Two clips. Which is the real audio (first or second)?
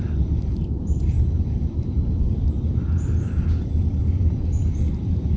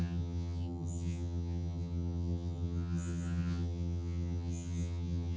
first